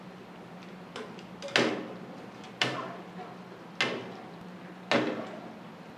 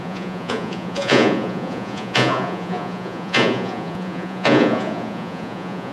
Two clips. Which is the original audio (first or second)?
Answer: first